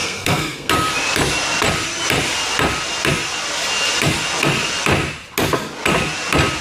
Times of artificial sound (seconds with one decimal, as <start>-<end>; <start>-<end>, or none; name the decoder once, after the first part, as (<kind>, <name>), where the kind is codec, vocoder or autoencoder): 0.0-0.7 (codec, SNAC)

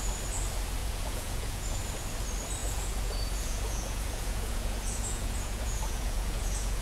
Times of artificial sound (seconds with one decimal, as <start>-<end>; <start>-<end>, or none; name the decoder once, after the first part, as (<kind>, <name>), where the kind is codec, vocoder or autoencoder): 0.8-1.8 (vocoder, Vocos); 2.6-6.8